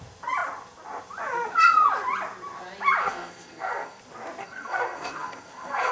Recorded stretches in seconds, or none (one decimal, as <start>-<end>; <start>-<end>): 0.0-3.0; 4.0-4.4